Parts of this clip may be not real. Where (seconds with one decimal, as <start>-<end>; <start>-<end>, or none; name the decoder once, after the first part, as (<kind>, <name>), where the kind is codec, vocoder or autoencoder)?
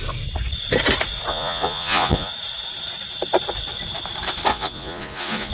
1.3-2.3 (vocoder, Vocos); 4.5-5.5